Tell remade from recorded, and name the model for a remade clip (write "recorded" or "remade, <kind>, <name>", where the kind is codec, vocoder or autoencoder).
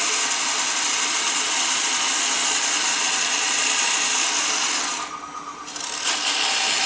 recorded